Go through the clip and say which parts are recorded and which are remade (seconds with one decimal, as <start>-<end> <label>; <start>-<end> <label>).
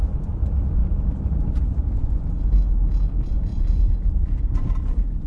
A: 0.0-0.8 recorded; 0.8-1.9 remade; 1.9-3.5 recorded; 3.5-5.3 remade